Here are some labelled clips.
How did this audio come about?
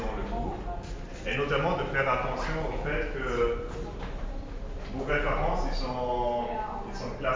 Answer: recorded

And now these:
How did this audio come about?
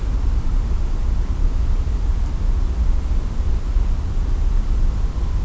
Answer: recorded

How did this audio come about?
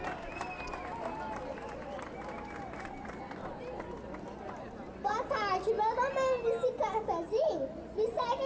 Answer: recorded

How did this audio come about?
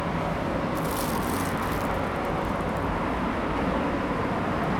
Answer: recorded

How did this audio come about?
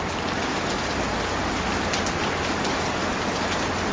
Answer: recorded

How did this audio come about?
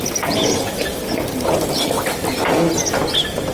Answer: recorded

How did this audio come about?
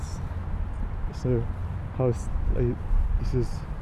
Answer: recorded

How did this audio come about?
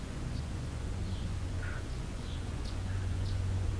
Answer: remade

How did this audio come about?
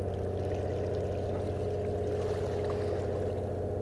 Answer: recorded